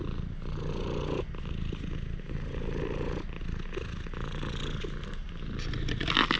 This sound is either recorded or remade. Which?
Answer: recorded